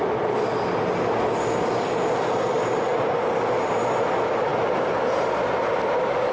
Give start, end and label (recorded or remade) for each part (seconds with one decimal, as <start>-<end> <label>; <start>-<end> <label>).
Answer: 0.0-4.5 recorded; 4.5-5.8 remade; 5.8-6.3 recorded